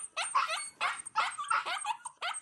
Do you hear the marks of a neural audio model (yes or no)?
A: no